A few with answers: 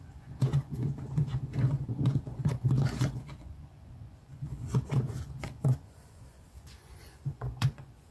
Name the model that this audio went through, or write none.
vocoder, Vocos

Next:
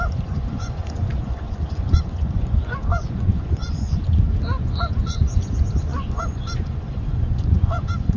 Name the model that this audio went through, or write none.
vocoder, Vocos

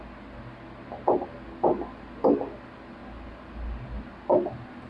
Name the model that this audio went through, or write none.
none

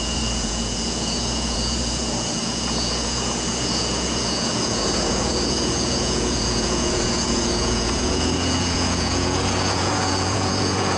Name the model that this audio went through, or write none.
vocoder, Vocos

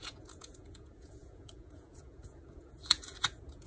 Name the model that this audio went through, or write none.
vocoder, Vocos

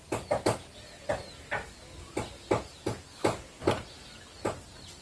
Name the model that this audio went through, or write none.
none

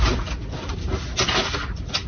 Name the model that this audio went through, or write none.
none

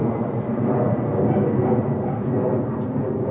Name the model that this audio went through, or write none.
none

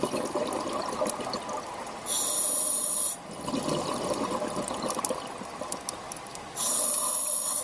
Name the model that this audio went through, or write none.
none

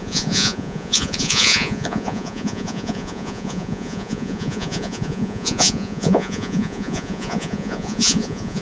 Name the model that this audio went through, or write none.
vocoder, Vocos